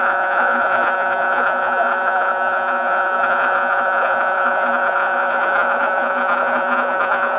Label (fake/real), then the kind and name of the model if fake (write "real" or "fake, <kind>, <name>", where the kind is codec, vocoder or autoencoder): fake, vocoder, Vocos